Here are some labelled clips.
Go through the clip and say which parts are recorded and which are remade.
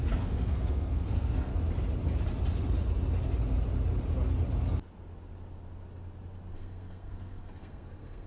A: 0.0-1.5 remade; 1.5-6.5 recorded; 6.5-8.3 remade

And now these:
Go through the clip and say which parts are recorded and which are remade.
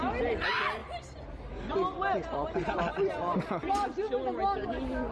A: 0.0-5.1 recorded